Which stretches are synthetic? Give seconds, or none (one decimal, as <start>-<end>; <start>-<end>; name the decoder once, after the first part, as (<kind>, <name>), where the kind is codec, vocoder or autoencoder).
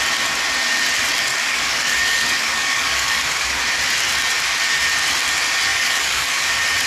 1.3-3.6 (codec, DAC); 5.7-6.5